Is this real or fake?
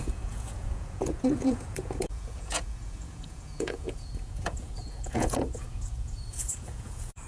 fake